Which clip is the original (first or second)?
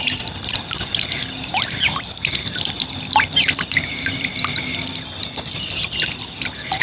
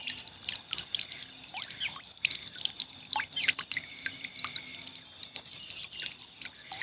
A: second